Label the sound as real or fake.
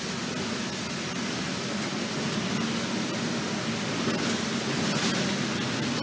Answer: real